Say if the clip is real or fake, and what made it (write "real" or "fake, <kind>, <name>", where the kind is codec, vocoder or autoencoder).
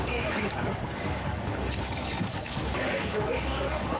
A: fake, codec, DAC